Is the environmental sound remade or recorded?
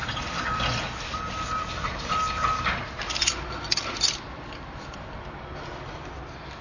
recorded